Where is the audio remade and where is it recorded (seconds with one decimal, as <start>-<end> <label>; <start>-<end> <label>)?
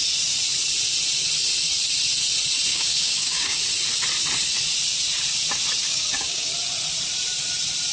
0.0-2.7 recorded; 2.7-3.6 remade; 3.6-5.8 recorded; 5.8-6.5 remade; 6.5-7.9 recorded